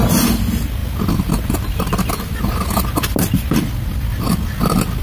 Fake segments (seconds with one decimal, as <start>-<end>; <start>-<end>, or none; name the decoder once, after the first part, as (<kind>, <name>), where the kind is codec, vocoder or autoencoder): none